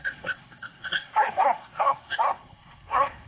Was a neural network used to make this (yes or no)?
yes